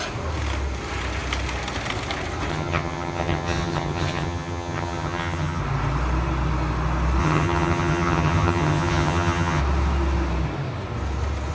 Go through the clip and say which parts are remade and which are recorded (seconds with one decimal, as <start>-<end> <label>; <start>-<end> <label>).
0.0-2.5 recorded; 2.5-5.6 remade; 5.6-7.2 recorded; 7.2-9.6 remade; 9.6-11.5 recorded